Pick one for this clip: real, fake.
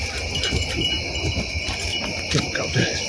real